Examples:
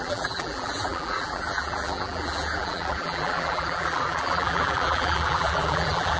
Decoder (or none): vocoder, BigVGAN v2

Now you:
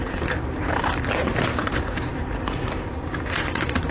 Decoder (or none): vocoder, BigVGAN v2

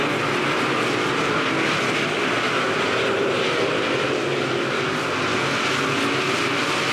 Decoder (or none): none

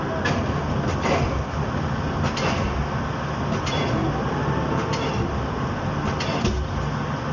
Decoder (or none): none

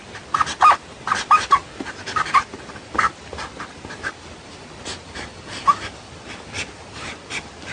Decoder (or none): none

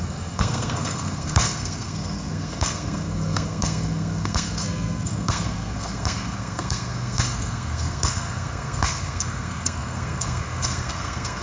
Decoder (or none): codec, SNAC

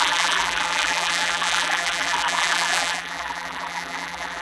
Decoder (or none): vocoder, BigVGAN v2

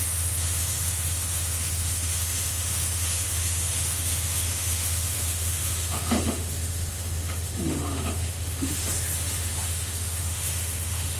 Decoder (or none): autoencoder, DAC-VAE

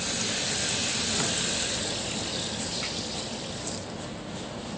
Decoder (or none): none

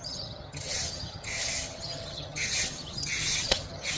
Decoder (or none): vocoder, HiFi-GAN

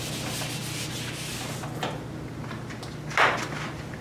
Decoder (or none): none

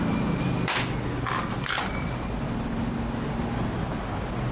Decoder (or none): none